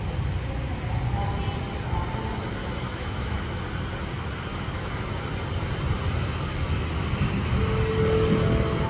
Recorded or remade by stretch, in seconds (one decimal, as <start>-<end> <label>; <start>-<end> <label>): 0.0-2.6 recorded; 2.6-3.6 remade; 3.6-4.5 recorded; 4.5-5.1 remade; 5.1-8.9 recorded